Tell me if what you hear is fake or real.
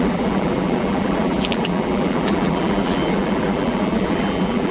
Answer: fake